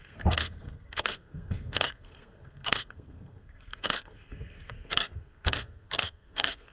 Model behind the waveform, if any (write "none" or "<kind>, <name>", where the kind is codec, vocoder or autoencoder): codec, SNAC